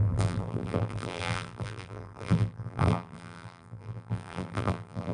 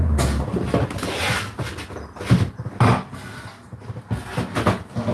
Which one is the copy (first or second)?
first